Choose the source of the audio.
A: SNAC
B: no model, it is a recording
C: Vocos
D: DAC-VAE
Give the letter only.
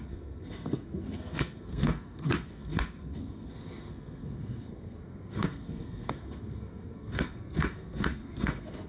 A